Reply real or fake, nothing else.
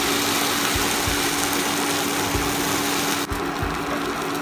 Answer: real